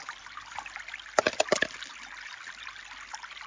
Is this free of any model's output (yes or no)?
yes